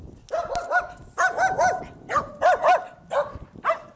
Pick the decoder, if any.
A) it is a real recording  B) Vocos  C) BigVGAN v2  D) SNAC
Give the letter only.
A